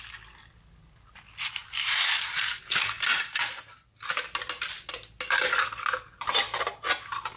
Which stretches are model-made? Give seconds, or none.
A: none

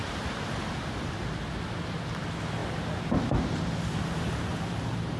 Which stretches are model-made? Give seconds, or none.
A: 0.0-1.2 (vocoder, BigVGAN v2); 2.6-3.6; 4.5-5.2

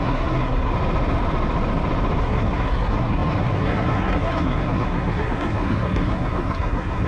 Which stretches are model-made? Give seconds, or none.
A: 0.0-0.7 (codec, SNAC); 2.2-7.1